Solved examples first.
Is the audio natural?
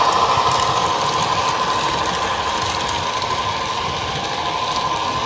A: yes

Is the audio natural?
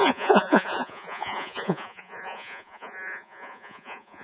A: no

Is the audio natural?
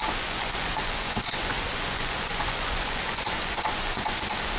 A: no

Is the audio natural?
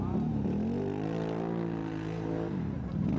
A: yes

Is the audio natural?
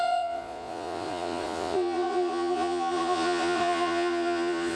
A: no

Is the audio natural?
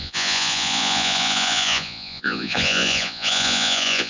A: no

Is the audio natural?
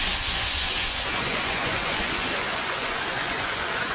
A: no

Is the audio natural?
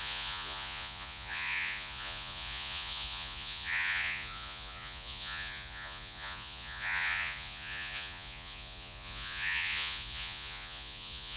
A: no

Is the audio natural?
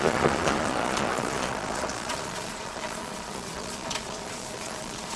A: no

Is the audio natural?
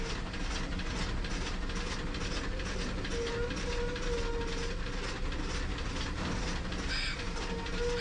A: yes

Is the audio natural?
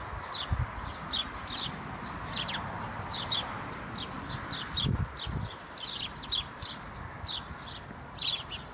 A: yes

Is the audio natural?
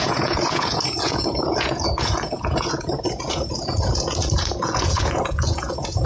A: no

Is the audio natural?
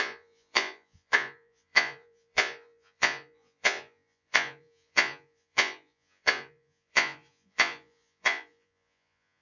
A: no